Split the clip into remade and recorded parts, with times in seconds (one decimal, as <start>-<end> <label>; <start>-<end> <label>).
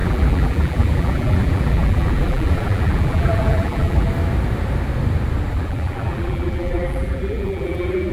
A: 0.0-4.1 remade; 4.1-5.5 recorded; 5.5-8.1 remade